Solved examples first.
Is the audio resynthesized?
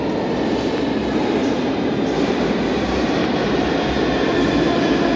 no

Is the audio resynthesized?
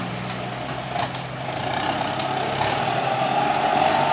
no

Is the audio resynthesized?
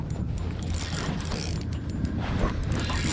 no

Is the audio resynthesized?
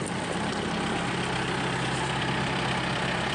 yes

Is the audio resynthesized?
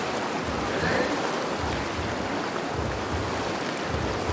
no